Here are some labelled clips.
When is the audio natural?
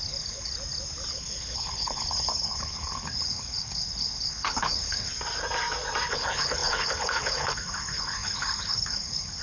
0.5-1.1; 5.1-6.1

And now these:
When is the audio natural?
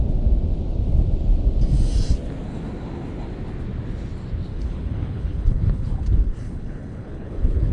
0.0-4.5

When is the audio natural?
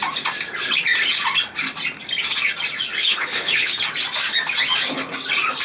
0.0-3.0; 3.7-5.6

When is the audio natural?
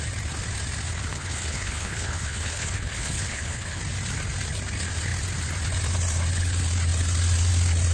0.0-1.1; 3.8-7.9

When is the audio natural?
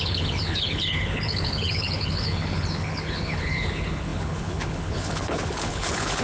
none